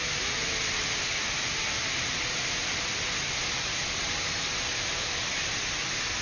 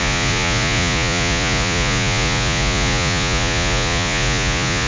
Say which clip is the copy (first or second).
second